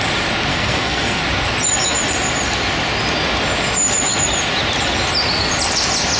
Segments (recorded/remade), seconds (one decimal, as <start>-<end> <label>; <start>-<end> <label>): 0.0-0.5 recorded; 0.5-1.2 remade; 1.2-6.2 recorded